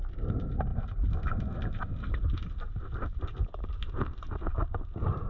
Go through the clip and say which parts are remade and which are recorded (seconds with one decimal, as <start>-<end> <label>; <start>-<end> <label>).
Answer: 0.0-5.3 recorded